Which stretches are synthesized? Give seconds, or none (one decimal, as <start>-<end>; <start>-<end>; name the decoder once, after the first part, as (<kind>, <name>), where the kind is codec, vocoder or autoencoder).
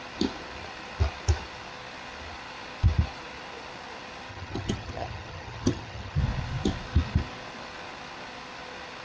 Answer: 4.3-6.2 (vocoder, HiFi-GAN)